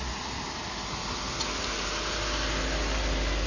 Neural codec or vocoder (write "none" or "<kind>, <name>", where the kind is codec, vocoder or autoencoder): none